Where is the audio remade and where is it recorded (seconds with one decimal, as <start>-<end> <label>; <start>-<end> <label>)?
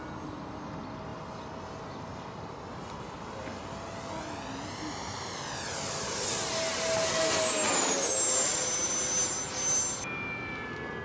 0.0-11.0 recorded